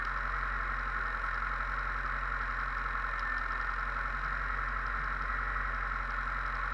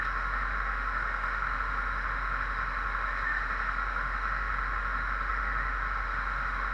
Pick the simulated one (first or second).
second